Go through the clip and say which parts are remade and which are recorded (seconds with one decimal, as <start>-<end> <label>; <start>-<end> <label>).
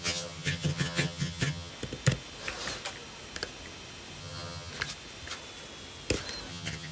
0.0-1.7 remade; 1.7-4.2 recorded; 4.2-4.7 remade; 4.7-6.5 recorded; 6.5-6.9 remade